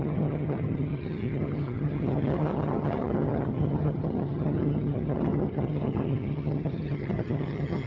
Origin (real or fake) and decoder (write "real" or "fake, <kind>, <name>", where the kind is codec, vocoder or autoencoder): fake, vocoder, HiFi-GAN